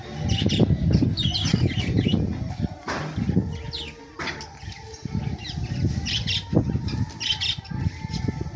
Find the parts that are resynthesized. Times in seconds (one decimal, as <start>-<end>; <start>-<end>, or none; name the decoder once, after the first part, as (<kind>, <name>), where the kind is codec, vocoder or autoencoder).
none